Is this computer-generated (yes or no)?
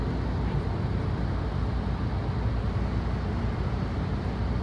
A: no